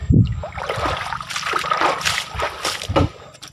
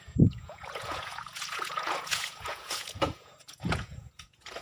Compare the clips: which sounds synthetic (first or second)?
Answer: second